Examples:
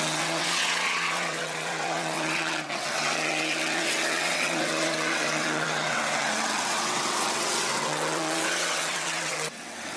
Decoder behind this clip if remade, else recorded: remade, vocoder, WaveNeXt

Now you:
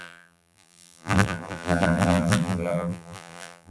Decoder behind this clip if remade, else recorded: remade, vocoder, BigVGAN v2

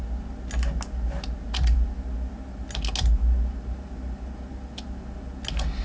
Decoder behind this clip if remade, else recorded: recorded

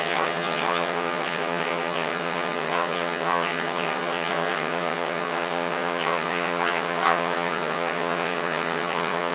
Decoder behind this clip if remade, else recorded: remade, vocoder, HiFi-GAN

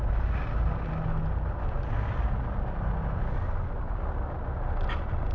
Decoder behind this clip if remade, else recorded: recorded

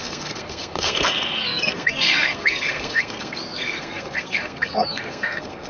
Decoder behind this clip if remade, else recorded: remade, codec, SNAC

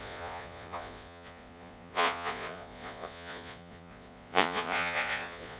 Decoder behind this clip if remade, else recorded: remade, vocoder, Vocos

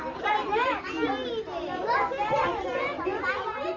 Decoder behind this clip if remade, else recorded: recorded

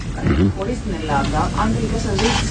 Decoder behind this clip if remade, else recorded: recorded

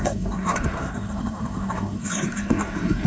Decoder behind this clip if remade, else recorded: remade, codec, SNAC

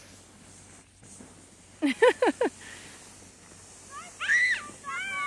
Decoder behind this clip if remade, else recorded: recorded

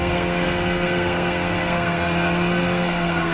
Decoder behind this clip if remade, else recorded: remade, codec, SNAC